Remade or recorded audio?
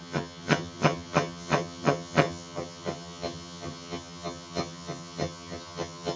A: remade